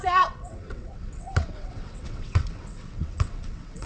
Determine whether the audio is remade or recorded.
remade